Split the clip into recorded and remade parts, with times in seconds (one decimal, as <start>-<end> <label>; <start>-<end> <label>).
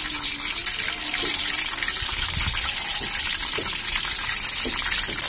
0.0-5.3 recorded